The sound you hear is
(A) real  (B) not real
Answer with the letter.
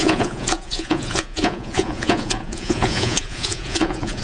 B